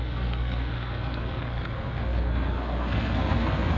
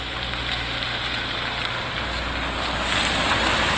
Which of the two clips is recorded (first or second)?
second